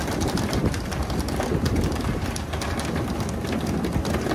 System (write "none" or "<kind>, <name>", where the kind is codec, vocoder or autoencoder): none